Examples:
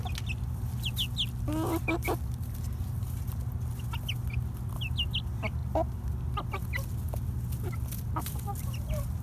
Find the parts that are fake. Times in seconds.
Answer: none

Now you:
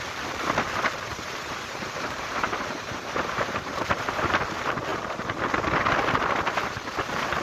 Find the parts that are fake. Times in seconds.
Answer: 1.1-4.4 (vocoder, BigVGAN v2)

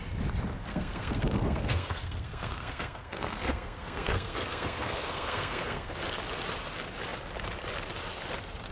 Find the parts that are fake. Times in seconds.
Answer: 0.7-5.9 (codec, SNAC)

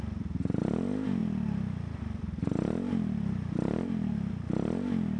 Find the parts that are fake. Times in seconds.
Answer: none